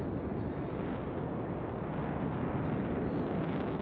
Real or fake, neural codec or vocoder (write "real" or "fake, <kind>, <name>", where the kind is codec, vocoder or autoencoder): real